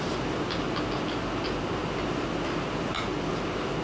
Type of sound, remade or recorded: recorded